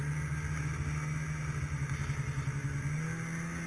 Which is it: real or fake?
real